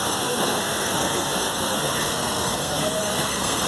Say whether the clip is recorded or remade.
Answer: remade